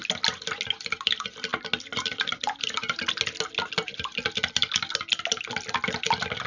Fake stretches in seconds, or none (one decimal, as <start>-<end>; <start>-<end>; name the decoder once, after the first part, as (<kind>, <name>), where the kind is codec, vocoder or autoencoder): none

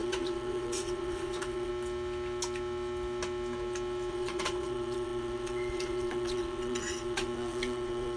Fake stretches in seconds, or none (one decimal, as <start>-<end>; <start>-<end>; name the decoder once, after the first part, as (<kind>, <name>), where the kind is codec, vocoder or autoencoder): 0.0-1.7 (vocoder, WaveNeXt); 4.1-8.2

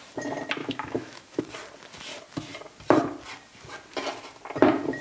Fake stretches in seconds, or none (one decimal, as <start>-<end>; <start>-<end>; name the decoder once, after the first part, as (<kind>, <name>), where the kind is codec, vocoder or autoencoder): 0.6-1.4 (autoencoder, DAC-VAE)

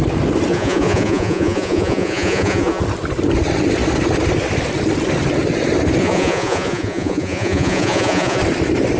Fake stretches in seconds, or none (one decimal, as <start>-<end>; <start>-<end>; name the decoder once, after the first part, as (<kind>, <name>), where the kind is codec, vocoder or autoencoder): 0.5-2.8 (vocoder, Vocos); 6.0-8.4

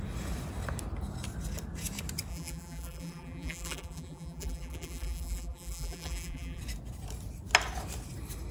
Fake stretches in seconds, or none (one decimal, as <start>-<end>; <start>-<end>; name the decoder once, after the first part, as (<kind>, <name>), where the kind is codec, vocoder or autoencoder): 2.3-6.6 (vocoder, BigVGAN v2)

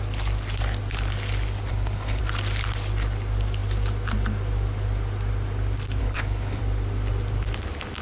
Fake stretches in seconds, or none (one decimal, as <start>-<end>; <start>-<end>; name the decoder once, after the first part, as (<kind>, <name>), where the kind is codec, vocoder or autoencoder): 1.7-2.2 (codec, HILCodec); 6.0-6.6